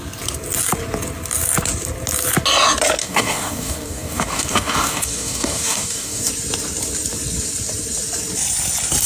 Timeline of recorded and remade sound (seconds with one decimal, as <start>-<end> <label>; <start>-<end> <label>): 0.0-3.0 recorded; 3.0-6.3 remade; 6.3-9.1 recorded